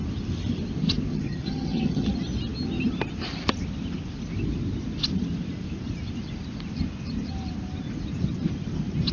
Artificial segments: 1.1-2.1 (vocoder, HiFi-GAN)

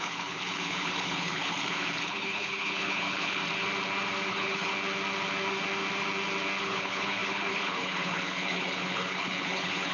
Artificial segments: 0.0-3.4 (codec, HILCodec); 4.3-4.7; 6.6-9.9

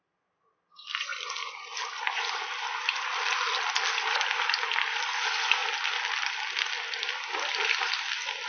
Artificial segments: none

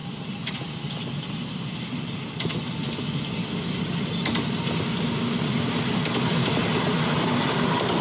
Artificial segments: none

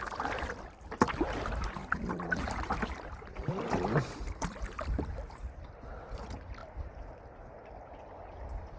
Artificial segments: none

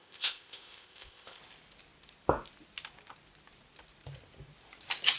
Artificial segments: 0.0-1.4 (codec, ZipCodec)

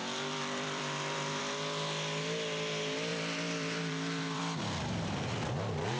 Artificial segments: 0.0-1.4 (vocoder, BigVGAN v2); 3.1-4.4

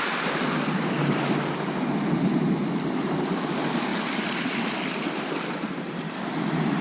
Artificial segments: none